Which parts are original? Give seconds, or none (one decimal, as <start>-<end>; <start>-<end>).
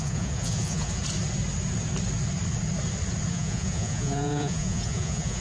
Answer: 1.0-3.3